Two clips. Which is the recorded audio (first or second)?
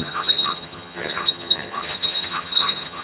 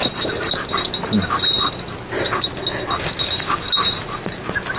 second